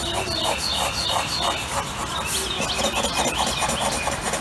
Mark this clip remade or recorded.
recorded